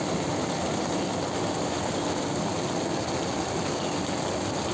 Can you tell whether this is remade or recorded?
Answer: recorded